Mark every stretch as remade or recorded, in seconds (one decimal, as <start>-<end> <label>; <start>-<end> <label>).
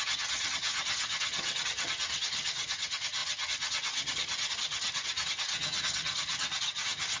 0.0-7.2 remade